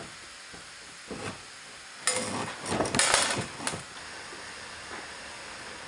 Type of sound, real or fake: real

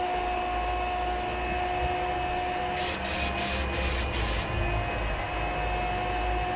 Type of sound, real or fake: real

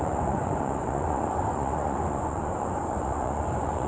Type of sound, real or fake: fake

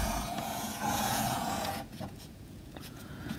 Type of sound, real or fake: fake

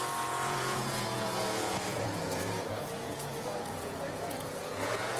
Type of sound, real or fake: fake